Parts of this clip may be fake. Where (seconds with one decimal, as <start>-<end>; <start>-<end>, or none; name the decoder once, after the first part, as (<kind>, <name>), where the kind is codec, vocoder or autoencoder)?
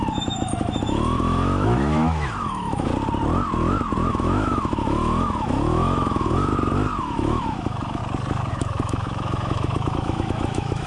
0.0-2.9 (autoencoder, DAC-VAE); 4.1-6.5; 7.0-8.0; 8.5-10.9